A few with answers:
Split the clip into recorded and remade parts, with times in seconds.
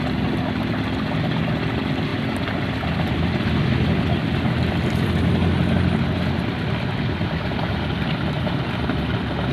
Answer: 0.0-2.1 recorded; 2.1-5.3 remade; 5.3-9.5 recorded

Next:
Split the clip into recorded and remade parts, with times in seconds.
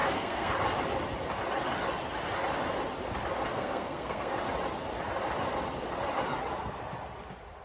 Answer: 0.0-0.5 remade; 0.5-3.5 recorded; 3.5-4.3 remade; 4.3-7.6 recorded